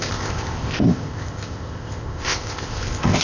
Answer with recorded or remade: remade